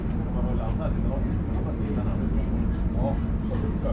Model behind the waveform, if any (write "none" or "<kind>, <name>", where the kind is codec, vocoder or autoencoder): none